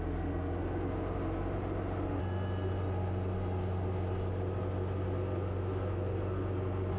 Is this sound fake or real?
real